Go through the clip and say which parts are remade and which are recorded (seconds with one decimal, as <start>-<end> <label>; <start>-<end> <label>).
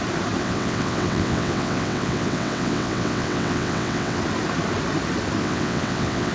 0.0-0.4 recorded; 0.4-4.2 remade; 4.2-5.4 recorded; 5.4-6.3 remade